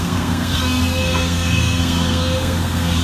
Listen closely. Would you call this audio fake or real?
fake